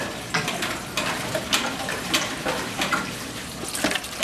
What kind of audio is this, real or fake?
fake